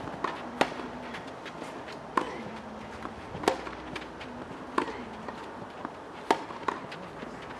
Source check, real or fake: real